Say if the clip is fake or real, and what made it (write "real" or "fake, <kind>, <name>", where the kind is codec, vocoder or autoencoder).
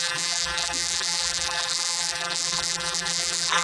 fake, vocoder, BigVGAN v2